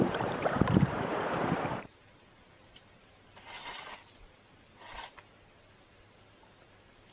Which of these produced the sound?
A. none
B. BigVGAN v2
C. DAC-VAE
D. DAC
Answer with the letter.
B